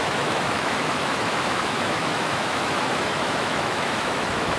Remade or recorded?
remade